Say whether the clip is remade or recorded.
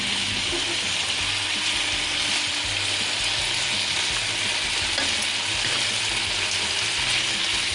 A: recorded